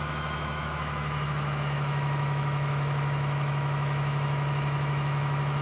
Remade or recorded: remade